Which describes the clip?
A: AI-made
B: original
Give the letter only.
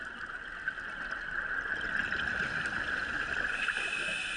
B